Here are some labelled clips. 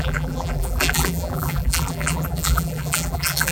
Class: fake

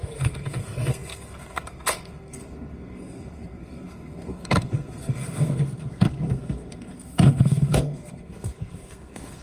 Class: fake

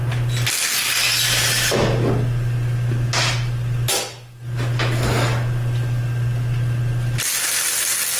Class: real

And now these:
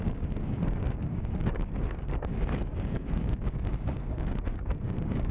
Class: fake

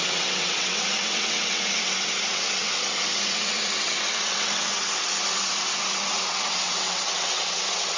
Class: fake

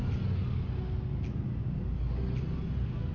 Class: real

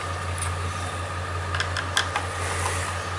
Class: real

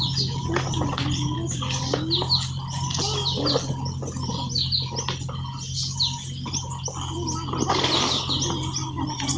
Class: real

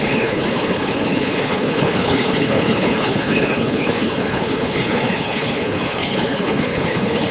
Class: fake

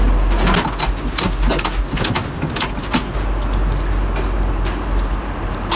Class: real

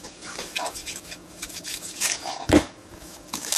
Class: fake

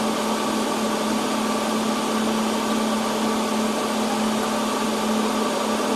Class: real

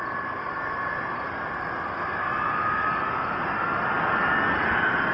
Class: real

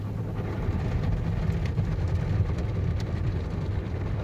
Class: real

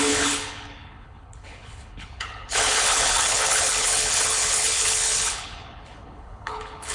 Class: fake